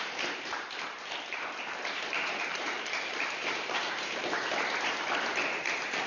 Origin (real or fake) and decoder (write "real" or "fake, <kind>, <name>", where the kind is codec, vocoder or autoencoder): fake, vocoder, BigVGAN v2